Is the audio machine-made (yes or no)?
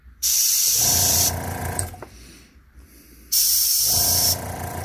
yes